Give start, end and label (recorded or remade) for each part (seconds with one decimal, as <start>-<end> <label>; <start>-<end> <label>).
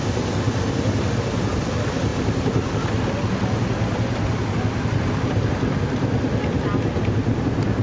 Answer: 0.0-7.8 recorded